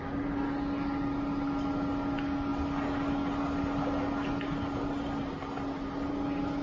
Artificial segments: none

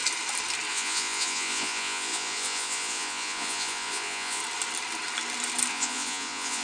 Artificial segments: 0.7-4.4 (vocoder, Vocos); 5.7-6.6

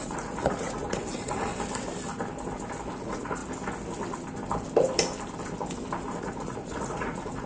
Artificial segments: 0.0-1.5 (vocoder, Vocos); 3.0-3.4; 6.2-7.5

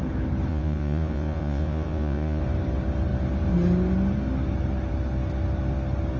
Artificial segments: 0.5-2.4 (vocoder, Vocos)

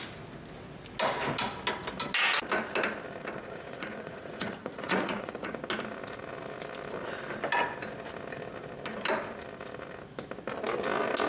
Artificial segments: 3.4-5.6 (vocoder, Vocos)

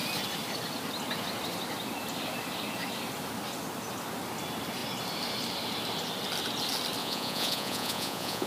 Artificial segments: 7.0-8.5 (vocoder, Vocos)

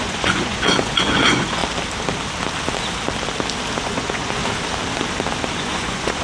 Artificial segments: 0.0-1.6 (vocoder, Vocos); 3.8-4.4; 5.6-6.2